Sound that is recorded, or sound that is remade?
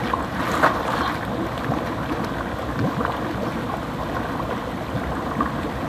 recorded